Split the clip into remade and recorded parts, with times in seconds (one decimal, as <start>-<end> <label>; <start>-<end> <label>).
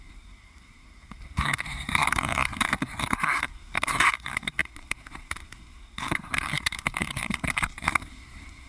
0.0-8.7 remade